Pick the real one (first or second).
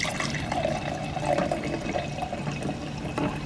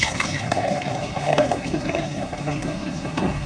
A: first